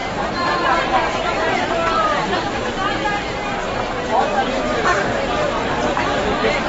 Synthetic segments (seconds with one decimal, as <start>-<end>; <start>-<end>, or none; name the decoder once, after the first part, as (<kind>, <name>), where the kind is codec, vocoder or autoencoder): 0.0-6.7 (vocoder, BigVGAN v2)